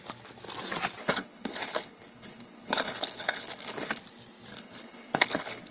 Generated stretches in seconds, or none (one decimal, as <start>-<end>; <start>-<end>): 1.0-4.0; 4.5-5.7